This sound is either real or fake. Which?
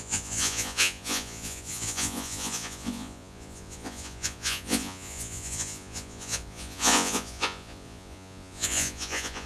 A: fake